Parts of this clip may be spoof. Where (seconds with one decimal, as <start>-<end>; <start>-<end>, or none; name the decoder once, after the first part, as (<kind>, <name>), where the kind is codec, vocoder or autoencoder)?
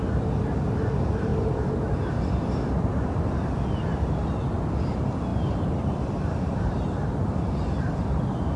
5.3-8.2 (vocoder, BigVGAN v2)